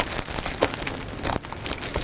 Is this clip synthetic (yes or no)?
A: no